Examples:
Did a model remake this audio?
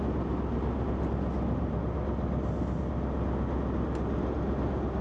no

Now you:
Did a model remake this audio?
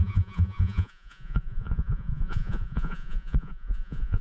yes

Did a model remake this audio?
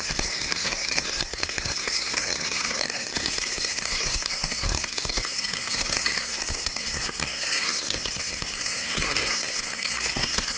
yes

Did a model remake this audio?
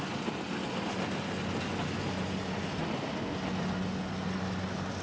no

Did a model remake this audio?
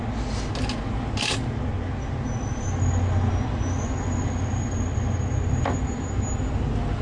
no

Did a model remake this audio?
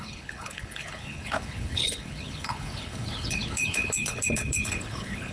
yes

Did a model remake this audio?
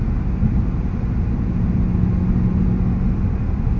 no